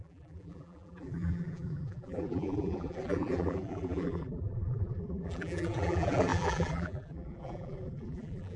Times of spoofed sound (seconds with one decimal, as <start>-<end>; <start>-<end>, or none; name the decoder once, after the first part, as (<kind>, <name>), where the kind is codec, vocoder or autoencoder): 0.0-8.6 (vocoder, BigVGAN v2)

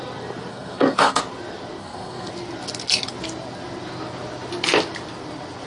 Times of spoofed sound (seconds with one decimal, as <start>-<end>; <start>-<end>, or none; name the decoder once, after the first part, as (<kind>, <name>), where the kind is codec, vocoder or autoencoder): 0.5-1.2 (codec, SNAC); 1.8-2.3

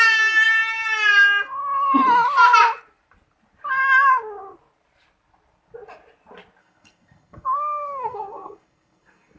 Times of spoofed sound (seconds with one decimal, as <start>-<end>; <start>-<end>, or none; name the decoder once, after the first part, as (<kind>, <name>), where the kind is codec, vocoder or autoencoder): 6.6-9.4 (codec, SNAC)

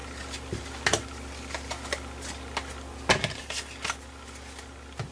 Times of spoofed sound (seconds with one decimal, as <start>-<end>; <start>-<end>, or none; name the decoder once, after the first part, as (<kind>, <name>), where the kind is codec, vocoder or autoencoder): none

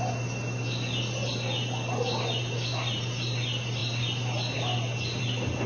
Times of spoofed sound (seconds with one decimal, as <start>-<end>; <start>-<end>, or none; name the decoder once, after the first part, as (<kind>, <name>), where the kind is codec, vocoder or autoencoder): none

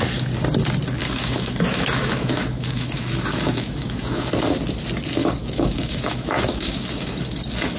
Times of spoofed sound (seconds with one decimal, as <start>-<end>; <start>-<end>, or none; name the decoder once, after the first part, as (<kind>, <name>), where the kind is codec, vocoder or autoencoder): 1.0-4.3 (autoencoder, DAC-VAE); 5.4-7.1

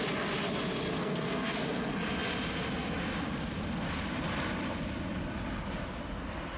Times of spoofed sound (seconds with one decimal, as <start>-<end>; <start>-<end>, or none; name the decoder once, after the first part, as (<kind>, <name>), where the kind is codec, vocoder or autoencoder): 0.9-1.8 (codec, SNAC)